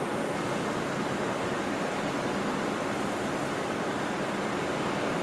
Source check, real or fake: real